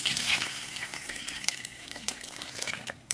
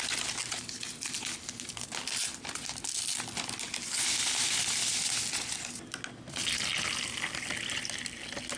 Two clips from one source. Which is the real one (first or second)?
second